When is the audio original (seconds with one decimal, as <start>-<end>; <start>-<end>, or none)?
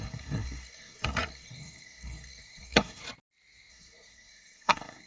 3.0-3.7